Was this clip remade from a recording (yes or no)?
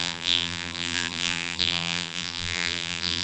yes